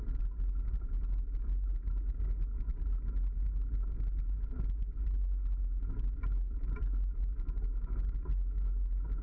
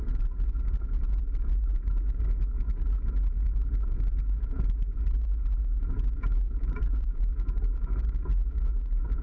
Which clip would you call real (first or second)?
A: first